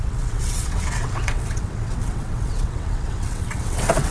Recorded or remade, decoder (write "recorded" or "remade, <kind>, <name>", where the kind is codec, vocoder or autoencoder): remade, vocoder, WaveNeXt